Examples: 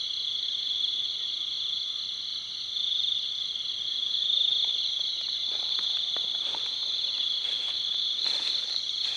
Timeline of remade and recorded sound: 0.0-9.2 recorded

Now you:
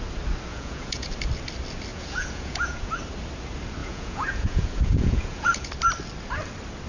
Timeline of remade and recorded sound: 0.0-0.5 recorded; 0.5-1.1 remade; 1.1-1.9 recorded; 1.9-2.9 remade; 2.9-3.8 recorded; 3.8-5.7 remade; 5.7-6.9 recorded

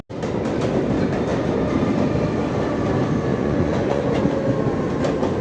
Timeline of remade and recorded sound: 0.0-3.3 recorded; 3.3-4.2 remade; 4.2-5.4 recorded

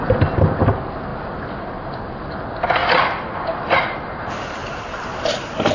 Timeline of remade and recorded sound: 0.0-5.7 recorded